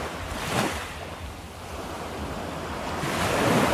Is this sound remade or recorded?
recorded